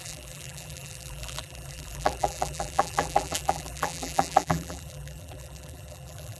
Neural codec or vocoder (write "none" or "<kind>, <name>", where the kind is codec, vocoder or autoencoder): vocoder, BigVGAN v2